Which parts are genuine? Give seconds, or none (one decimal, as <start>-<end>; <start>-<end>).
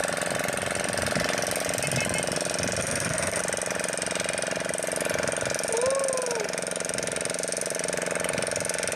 0.0-2.8; 3.4-9.0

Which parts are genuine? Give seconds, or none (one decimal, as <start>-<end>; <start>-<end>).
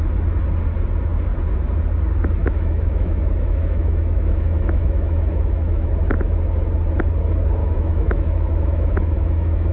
0.0-2.4; 5.9-7.6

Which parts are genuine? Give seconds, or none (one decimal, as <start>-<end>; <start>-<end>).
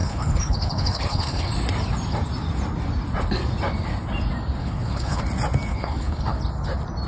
1.5-4.6; 5.2-5.7; 6.4-7.1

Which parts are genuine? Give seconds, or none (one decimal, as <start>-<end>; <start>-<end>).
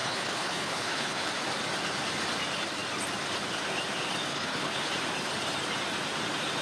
1.3-4.3; 4.9-6.6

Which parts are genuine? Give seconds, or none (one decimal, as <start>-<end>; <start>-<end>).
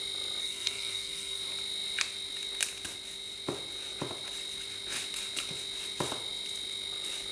0.0-0.4; 1.4-7.3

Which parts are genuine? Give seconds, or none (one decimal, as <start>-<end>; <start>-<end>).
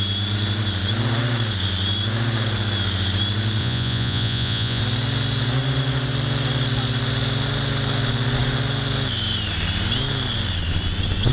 0.0-3.6; 4.8-11.3